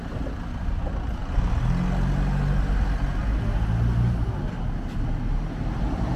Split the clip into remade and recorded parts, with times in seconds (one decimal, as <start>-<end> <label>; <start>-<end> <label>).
0.0-6.2 recorded